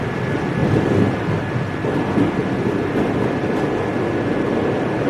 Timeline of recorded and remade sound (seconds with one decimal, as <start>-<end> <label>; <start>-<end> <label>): 0.0-5.1 recorded

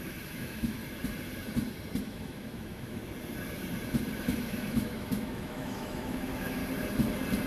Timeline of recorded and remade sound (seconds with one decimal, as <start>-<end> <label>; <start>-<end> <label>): 0.0-0.8 remade; 0.8-2.0 recorded; 2.0-3.0 remade; 3.0-4.2 recorded; 4.2-6.6 remade; 6.6-7.5 recorded

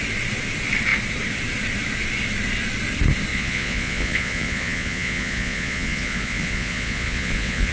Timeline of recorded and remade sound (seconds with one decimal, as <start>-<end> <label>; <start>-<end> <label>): 0.0-3.3 recorded; 3.3-7.7 remade

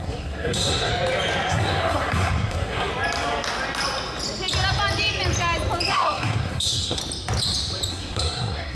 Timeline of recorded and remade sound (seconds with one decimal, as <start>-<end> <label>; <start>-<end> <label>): 0.0-0.9 remade; 0.9-1.5 recorded; 1.5-2.9 remade; 2.9-5.9 recorded; 5.9-7.0 remade; 7.0-7.9 recorded; 7.9-8.7 remade